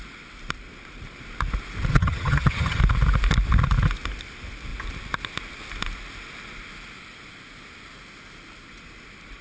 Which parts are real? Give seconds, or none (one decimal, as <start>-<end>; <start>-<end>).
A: 0.0-1.9; 2.8-9.4